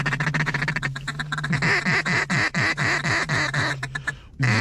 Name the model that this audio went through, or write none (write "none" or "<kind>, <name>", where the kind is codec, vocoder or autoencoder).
none